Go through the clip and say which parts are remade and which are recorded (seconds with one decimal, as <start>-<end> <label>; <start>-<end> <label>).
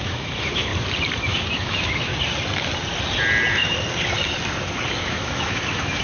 0.0-0.7 remade; 0.7-1.2 recorded; 1.2-2.1 remade; 2.1-5.0 recorded; 5.0-6.0 remade